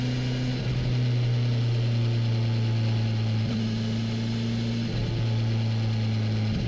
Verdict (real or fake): real